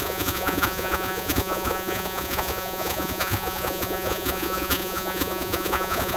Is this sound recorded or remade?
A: remade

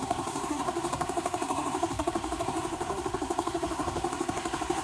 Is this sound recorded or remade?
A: remade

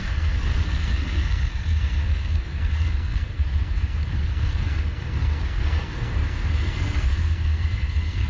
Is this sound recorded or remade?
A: remade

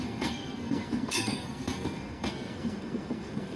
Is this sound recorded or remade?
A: remade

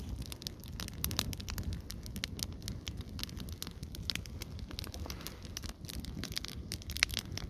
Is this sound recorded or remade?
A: recorded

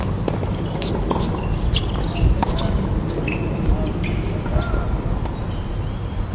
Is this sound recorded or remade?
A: recorded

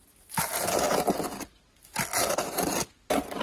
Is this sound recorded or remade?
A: recorded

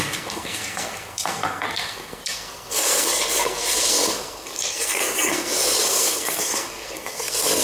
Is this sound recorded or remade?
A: remade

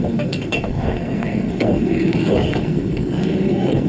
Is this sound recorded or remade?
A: remade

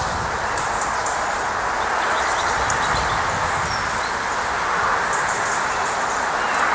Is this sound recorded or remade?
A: recorded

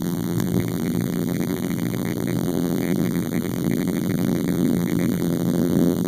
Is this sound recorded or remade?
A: remade